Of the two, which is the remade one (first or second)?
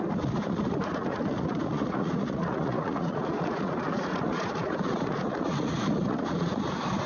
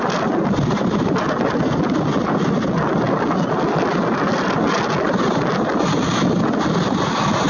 first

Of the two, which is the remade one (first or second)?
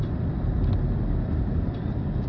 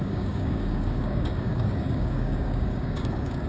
second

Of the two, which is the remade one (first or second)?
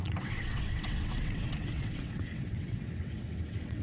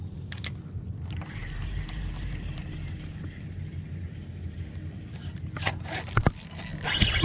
first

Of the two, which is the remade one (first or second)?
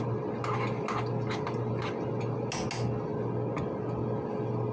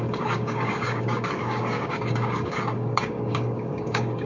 second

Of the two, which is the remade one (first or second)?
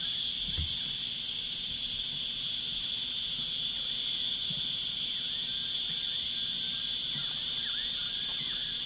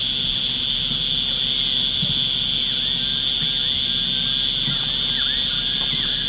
first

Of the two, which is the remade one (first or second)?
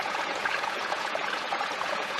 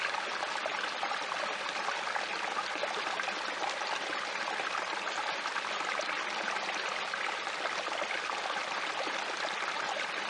first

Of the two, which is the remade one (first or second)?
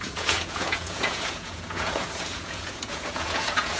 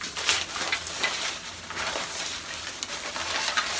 first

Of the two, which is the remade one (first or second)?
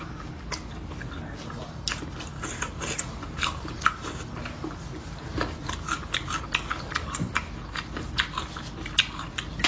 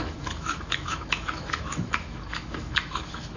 second